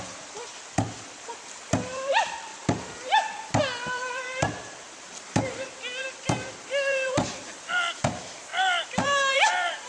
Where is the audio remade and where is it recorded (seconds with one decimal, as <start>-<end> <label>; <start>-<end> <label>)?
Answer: 0.0-2.5 remade; 2.5-3.6 recorded; 3.6-9.9 remade